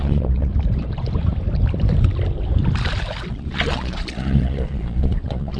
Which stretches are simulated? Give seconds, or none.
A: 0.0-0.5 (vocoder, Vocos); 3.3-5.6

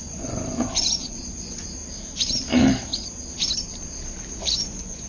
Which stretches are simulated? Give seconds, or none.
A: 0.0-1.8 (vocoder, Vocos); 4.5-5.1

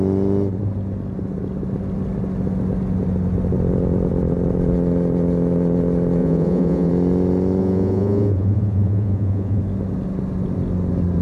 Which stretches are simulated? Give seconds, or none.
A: 6.2-6.9 (vocoder, Vocos); 7.6-9.6